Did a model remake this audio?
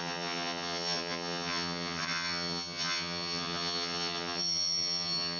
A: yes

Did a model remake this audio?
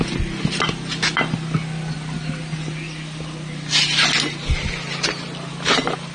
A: no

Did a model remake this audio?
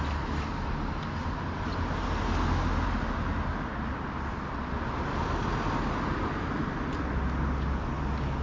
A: no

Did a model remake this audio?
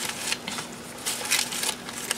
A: no